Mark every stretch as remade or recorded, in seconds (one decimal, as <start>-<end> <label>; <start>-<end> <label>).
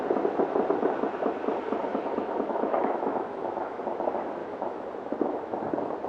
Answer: 0.0-1.9 recorded; 1.9-3.8 remade; 3.8-4.4 recorded; 4.4-5.6 remade; 5.6-6.1 recorded